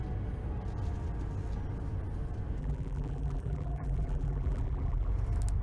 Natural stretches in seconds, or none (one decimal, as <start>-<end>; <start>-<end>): 0.0-2.6; 5.1-5.6